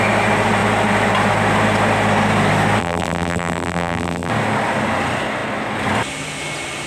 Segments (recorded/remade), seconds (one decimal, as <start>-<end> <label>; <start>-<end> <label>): 0.0-2.8 recorded; 2.8-4.3 remade; 4.3-6.9 recorded

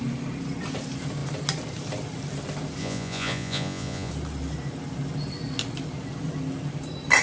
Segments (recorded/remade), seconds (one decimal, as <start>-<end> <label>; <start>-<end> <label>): 0.0-2.8 recorded; 2.8-4.1 remade; 4.1-7.2 recorded

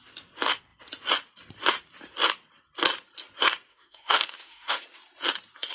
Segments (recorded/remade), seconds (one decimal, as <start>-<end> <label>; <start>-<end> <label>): 0.0-3.7 recorded; 3.7-4.8 remade; 4.8-5.7 recorded

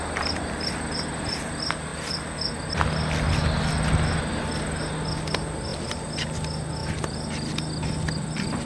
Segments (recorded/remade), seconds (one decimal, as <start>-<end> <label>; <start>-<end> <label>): 0.0-8.7 recorded